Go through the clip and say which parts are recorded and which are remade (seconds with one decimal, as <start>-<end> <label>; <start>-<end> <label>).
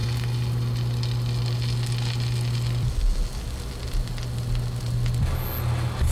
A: 0.0-6.1 recorded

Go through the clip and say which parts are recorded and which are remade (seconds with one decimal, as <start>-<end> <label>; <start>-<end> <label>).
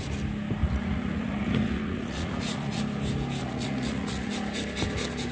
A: 0.0-0.6 recorded; 0.6-2.8 remade; 2.8-3.4 recorded; 3.4-4.3 remade; 4.3-5.3 recorded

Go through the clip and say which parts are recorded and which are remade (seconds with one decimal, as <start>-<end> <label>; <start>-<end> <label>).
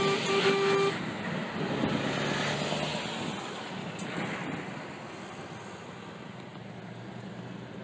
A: 0.0-7.8 recorded